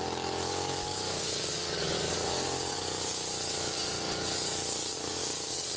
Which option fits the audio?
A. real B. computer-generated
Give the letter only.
B